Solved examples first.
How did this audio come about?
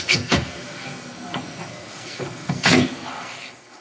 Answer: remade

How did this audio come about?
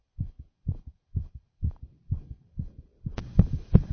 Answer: recorded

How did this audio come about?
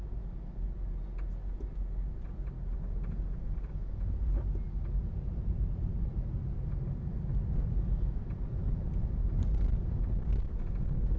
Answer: recorded